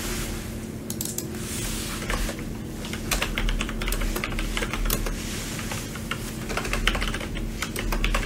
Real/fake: real